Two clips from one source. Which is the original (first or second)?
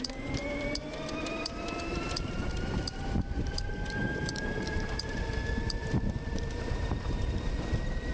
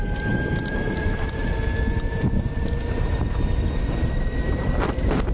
second